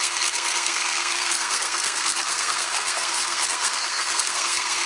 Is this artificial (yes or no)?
yes